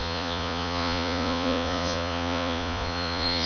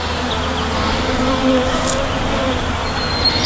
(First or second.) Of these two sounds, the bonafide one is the second